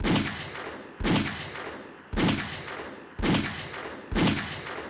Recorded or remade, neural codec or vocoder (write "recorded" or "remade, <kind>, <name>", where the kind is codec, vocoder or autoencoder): recorded